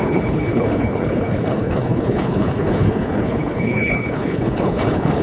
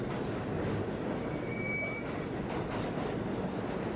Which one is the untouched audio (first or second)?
second